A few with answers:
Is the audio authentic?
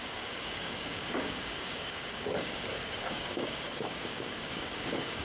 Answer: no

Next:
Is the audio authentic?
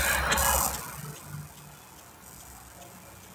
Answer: yes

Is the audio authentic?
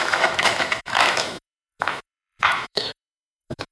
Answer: no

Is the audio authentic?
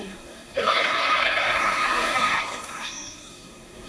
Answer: no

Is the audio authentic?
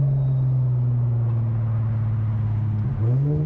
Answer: yes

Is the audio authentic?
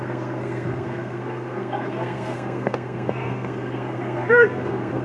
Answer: no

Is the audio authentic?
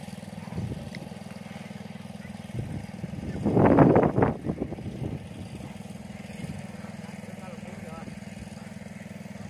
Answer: yes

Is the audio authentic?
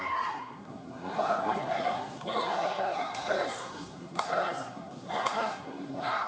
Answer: no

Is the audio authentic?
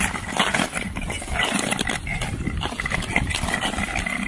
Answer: yes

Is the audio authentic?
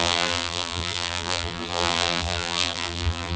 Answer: no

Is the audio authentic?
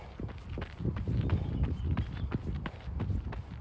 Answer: yes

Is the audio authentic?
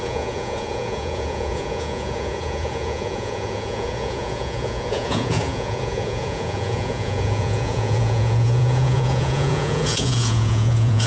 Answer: no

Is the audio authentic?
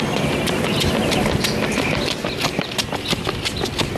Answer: yes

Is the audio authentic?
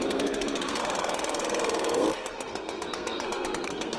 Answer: no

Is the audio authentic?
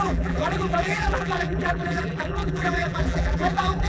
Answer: no